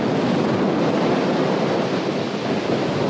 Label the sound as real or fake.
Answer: real